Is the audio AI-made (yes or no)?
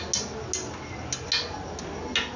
no